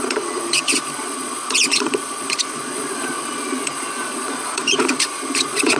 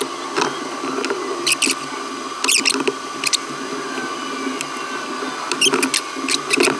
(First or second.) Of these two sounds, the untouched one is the second